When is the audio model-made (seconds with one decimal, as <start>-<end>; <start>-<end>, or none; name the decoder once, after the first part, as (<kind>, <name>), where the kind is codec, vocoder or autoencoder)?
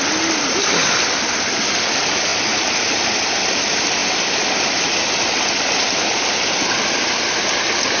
none